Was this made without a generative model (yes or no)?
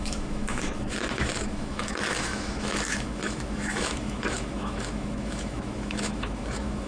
no